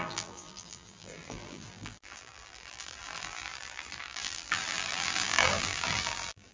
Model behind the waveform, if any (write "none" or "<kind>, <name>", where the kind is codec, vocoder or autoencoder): vocoder, BigVGAN v2